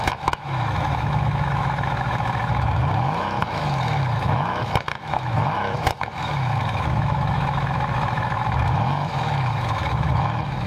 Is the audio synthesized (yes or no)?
yes